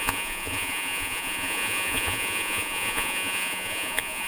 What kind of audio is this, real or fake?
fake